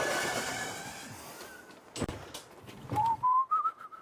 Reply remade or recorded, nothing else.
remade